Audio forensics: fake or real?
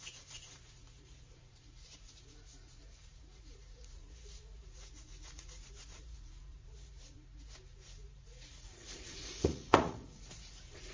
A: fake